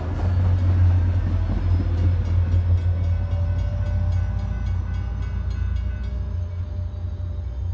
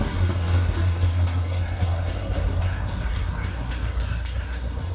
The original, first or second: first